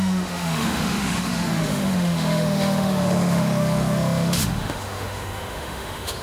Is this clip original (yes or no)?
no